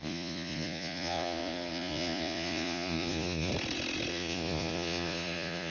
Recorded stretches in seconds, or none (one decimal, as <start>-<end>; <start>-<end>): 3.5-4.1